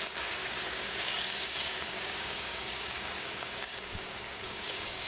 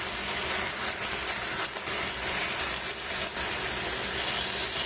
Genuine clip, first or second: second